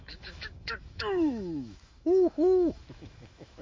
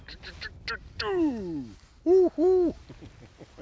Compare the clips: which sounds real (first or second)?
second